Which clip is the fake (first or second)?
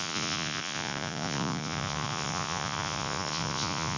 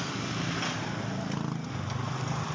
first